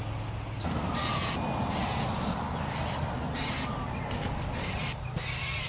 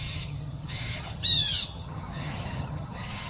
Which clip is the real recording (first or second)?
first